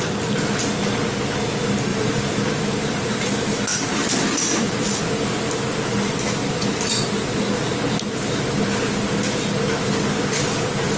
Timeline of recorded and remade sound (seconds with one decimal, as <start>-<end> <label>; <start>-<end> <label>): 0.0-1.9 recorded; 1.9-4.7 remade; 4.7-11.0 recorded